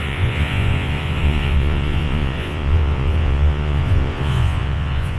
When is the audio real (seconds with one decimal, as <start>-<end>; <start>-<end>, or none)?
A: none